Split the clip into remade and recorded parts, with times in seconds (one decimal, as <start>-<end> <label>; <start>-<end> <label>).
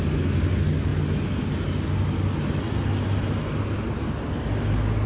0.0-5.1 recorded